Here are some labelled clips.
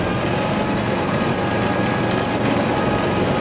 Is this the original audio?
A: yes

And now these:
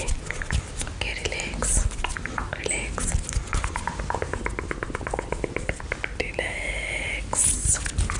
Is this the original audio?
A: yes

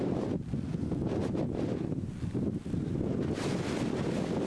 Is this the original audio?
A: yes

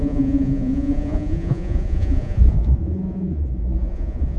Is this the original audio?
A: no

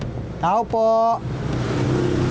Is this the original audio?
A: yes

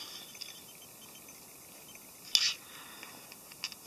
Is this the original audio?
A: yes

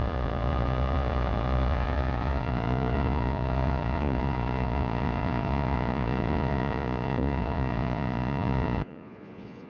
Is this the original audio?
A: no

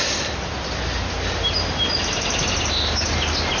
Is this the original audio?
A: yes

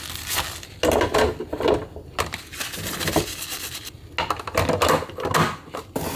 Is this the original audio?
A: yes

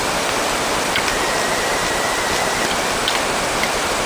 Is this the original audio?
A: yes